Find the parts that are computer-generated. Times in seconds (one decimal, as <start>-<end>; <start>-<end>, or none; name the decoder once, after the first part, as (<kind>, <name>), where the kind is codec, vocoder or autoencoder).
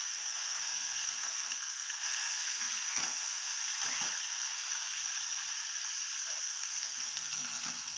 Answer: 0.0-3.6 (codec, SNAC); 4.2-5.0; 6.4-8.0